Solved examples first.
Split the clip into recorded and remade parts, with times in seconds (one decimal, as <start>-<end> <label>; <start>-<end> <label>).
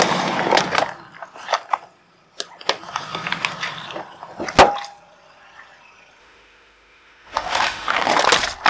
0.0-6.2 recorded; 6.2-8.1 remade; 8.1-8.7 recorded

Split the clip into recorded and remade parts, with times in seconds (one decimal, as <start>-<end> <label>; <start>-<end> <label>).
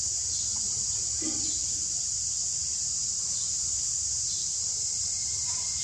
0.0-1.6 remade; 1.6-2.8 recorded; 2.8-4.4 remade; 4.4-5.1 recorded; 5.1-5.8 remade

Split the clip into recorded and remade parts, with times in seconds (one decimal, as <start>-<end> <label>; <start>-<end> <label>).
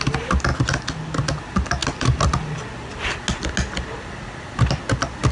0.0-5.3 recorded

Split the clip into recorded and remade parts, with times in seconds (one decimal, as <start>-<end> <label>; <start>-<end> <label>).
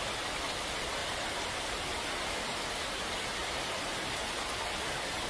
0.0-1.0 recorded; 1.0-2.0 remade; 2.0-3.4 recorded; 3.4-4.2 remade; 4.2-5.3 recorded